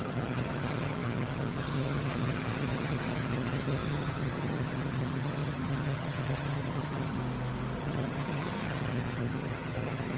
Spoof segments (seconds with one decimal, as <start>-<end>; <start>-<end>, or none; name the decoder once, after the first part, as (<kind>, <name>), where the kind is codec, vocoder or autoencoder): 0.0-7.2 (vocoder, HiFi-GAN); 7.8-10.2